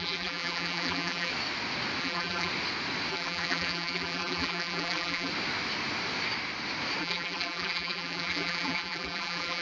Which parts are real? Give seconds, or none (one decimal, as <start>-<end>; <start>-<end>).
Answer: 1.3-2.0; 2.5-3.1; 5.3-7.0